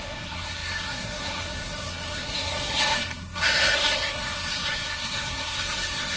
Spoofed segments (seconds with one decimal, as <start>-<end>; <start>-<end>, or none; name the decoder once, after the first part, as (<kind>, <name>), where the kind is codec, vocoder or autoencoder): 0.0-6.2 (codec, SNAC)